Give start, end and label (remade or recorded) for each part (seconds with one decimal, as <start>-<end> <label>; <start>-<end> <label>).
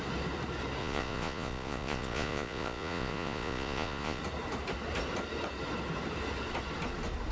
0.0-0.8 recorded; 0.8-4.2 remade; 4.2-7.3 recorded